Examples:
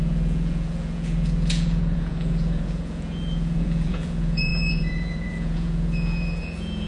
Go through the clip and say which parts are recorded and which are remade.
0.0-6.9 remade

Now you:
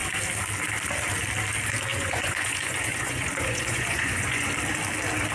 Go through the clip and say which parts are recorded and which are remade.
0.0-1.9 recorded; 1.9-4.5 remade; 4.5-5.3 recorded

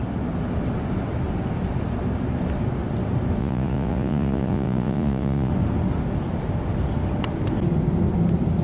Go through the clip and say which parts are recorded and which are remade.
0.0-3.4 recorded; 3.4-5.5 remade; 5.5-8.6 recorded

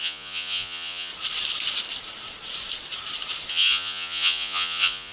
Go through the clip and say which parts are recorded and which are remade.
0.0-1.1 remade; 1.1-3.5 recorded; 3.5-5.1 remade

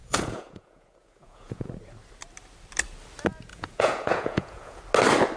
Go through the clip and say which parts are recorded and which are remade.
0.0-1.7 remade; 1.7-3.5 recorded; 3.5-4.8 remade; 4.8-5.4 recorded

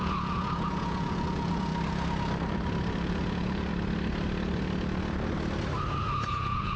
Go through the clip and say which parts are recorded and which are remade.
0.0-1.7 remade; 1.7-3.1 recorded; 3.1-3.7 remade; 3.7-6.3 recorded; 6.3-6.8 remade

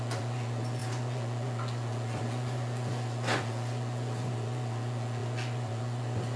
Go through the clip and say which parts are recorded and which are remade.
0.0-6.4 remade